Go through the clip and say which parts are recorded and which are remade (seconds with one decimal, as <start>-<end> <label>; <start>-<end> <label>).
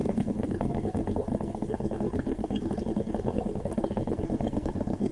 0.0-5.1 remade